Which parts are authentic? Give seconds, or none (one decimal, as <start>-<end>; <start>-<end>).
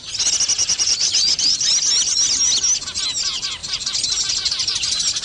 0.0-0.6; 1.7-3.6; 4.5-5.2